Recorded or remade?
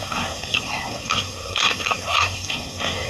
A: remade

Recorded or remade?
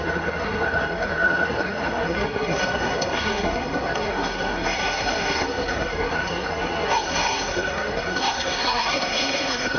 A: remade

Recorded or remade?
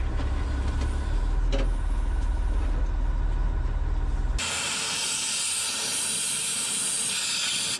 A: recorded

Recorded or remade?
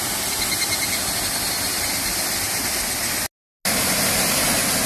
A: recorded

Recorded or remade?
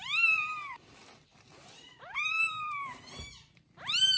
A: recorded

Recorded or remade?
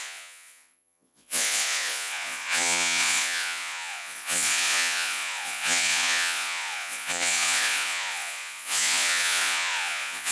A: remade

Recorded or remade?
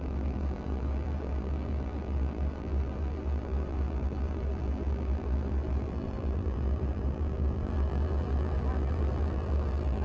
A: remade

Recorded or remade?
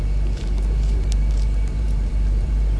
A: remade